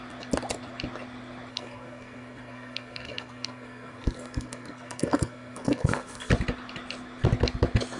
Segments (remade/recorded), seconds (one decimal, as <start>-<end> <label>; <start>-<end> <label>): 0.0-1.5 recorded; 1.5-6.3 remade; 6.3-8.0 recorded